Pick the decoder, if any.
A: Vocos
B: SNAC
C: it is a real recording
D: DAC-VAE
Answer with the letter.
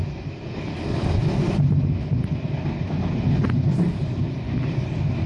C